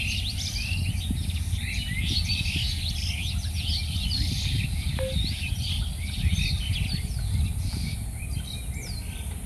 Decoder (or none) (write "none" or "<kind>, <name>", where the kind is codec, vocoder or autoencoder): none